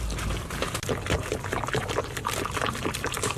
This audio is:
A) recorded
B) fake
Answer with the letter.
A